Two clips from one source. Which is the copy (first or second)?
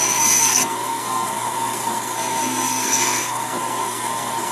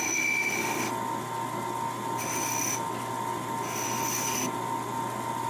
first